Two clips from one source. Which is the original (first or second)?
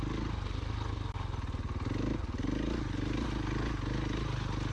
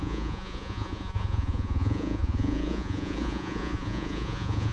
first